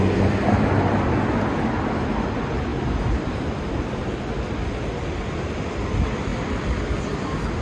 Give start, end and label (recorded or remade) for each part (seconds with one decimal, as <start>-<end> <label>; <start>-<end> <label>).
0.0-7.6 recorded